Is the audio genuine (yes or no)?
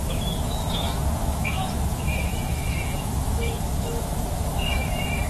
no